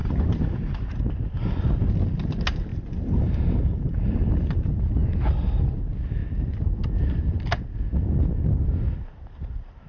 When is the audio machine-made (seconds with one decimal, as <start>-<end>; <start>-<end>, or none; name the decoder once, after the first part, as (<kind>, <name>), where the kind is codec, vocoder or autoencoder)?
0.0-1.0 (vocoder, BigVGAN v2); 2.7-4.9